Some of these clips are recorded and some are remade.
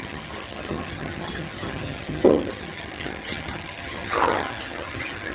remade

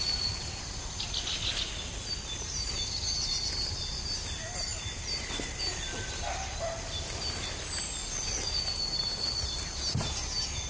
recorded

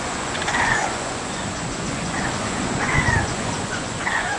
remade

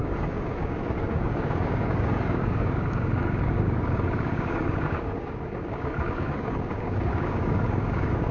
remade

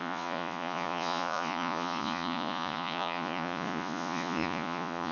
remade